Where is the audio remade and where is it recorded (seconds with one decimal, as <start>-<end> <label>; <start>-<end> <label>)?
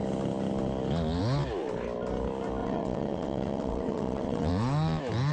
0.0-2.6 recorded; 2.6-4.5 remade; 4.5-5.3 recorded